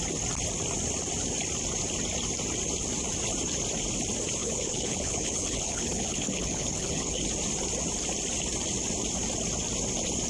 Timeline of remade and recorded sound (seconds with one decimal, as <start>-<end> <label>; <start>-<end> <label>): 0.0-4.4 recorded; 4.4-7.2 remade; 7.2-10.3 recorded

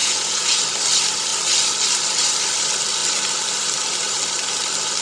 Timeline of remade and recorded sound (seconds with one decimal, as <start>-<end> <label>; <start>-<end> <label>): 0.0-0.6 remade; 0.6-5.0 recorded

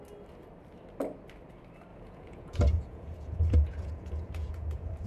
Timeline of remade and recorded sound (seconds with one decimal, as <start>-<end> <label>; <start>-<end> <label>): 0.0-1.9 recorded; 1.9-5.1 remade